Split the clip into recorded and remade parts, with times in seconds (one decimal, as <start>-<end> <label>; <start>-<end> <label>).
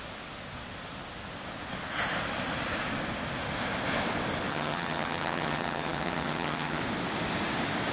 0.0-4.5 recorded; 4.5-6.8 remade; 6.8-7.9 recorded